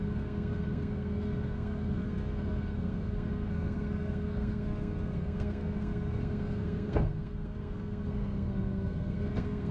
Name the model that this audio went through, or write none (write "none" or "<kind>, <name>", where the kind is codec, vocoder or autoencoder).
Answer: codec, SNAC